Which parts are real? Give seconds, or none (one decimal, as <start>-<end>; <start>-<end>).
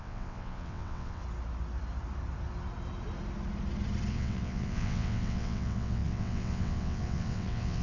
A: 1.2-4.1